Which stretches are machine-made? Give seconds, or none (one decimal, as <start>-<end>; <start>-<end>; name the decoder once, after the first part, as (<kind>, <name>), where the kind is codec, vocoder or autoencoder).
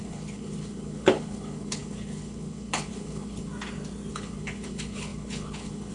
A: 0.0-3.5 (codec, HILCodec); 4.1-5.9